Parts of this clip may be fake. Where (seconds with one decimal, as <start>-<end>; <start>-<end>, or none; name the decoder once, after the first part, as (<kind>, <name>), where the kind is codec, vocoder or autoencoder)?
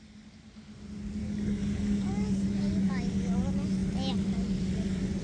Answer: 1.2-2.9 (codec, DAC)